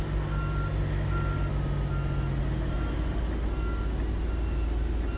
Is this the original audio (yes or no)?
yes